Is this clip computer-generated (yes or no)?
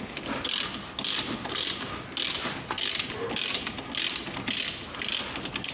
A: no